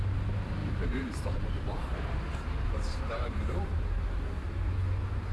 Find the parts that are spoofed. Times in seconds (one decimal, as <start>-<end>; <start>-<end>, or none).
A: 0.6-3.8